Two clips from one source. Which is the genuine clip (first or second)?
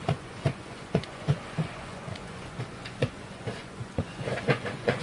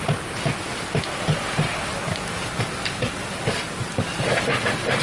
second